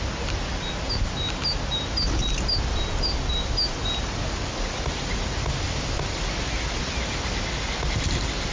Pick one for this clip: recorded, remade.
recorded